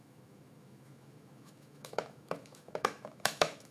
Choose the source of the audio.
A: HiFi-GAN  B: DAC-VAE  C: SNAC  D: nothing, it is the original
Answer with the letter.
B